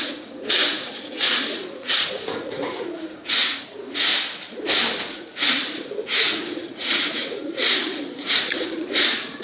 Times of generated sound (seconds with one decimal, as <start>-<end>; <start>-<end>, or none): 0.0-4.1; 5.0-9.4